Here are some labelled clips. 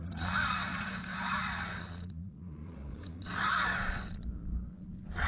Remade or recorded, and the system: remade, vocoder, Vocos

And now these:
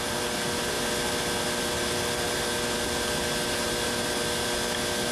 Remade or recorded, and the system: recorded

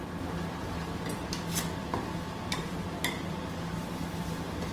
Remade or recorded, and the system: recorded